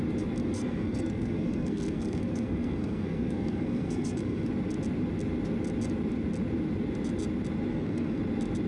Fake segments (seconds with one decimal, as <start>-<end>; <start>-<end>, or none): 0.4-4.5; 7.7-8.2